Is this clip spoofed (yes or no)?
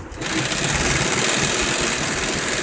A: no